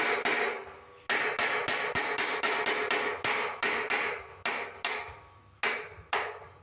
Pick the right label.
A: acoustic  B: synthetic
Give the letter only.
A